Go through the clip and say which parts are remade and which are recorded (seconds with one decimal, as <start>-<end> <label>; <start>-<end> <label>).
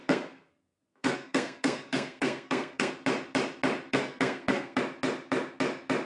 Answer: 0.0-2.9 remade; 2.9-3.9 recorded; 3.9-4.8 remade; 4.8-6.1 recorded